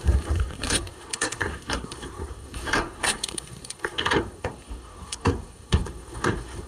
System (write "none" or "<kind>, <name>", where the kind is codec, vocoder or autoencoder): codec, SNAC